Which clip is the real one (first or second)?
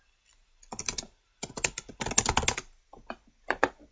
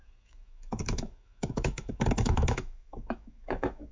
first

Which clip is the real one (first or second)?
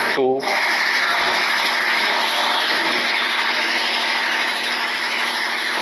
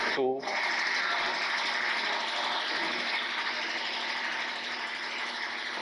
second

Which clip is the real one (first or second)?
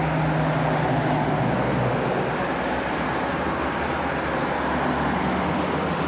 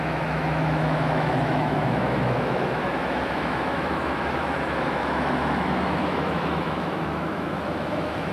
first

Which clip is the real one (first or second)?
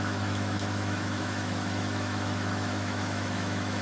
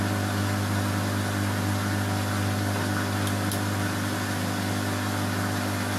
second